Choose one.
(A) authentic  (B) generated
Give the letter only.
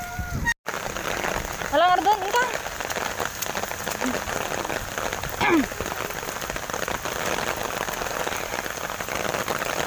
A